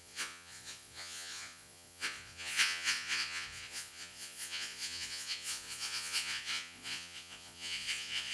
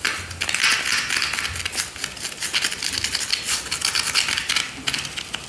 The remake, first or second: first